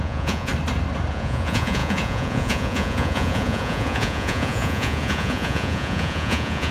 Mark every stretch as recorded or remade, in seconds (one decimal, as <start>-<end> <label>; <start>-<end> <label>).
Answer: 0.0-0.5 remade; 0.5-1.1 recorded; 1.1-6.7 remade